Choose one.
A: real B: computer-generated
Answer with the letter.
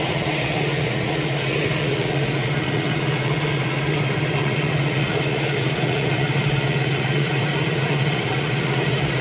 B